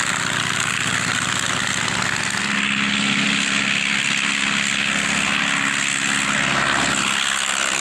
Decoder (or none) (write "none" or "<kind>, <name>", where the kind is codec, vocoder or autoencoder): none